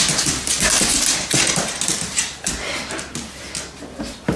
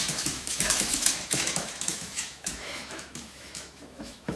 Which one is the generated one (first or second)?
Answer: second